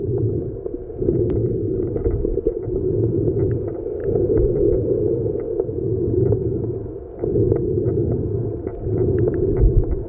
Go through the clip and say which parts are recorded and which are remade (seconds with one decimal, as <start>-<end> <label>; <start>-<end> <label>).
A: 0.0-1.4 recorded; 1.4-2.5 remade; 2.5-4.0 recorded; 4.0-5.0 remade; 5.0-5.9 recorded; 5.9-6.4 remade; 6.4-10.1 recorded